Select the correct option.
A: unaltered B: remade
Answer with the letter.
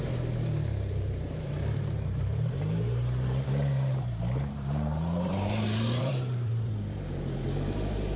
B